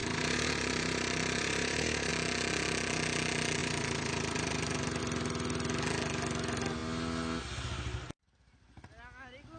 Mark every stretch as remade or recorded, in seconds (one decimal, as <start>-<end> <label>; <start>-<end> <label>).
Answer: 0.0-2.1 remade; 2.1-3.6 recorded; 3.6-5.0 remade; 5.0-9.6 recorded